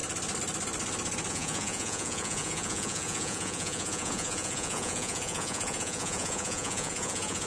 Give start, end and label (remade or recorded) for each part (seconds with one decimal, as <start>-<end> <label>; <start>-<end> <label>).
0.0-1.3 recorded; 1.3-7.5 remade